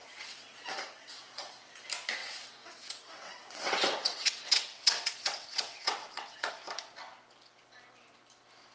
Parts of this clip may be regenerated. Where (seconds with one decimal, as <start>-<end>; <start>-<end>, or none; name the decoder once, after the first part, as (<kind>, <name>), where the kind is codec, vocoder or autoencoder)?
0.0-1.7 (vocoder, WaveNeXt); 2.2-6.5